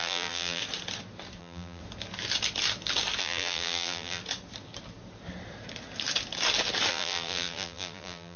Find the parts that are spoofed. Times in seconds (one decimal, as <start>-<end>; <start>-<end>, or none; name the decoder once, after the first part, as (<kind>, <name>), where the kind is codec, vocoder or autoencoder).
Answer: 0.0-0.6 (vocoder, BigVGAN v2); 1.4-1.8; 3.2-4.2; 6.9-8.4